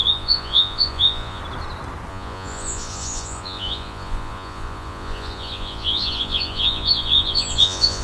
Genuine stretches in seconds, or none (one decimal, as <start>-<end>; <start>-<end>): 1.4-2.1